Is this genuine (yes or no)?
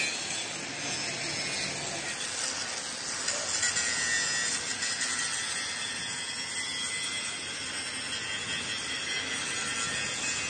yes